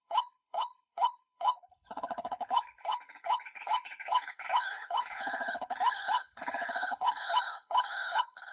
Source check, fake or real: fake